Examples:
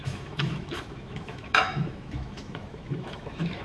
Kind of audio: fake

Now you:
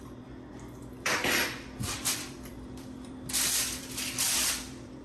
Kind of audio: fake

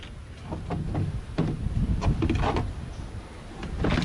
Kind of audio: real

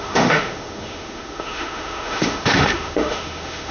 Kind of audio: fake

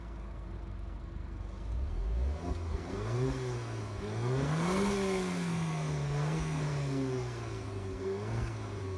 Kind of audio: fake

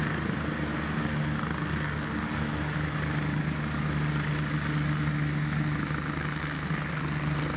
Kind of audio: real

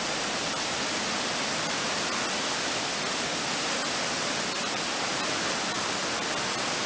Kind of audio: real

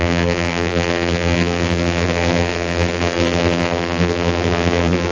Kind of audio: fake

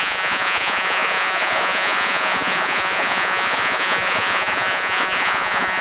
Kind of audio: fake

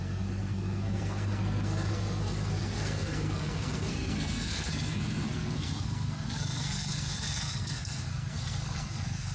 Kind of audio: fake